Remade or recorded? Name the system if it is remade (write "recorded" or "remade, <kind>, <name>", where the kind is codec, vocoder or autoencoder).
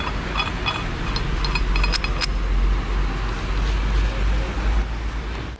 recorded